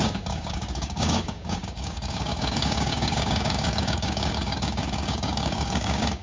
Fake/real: fake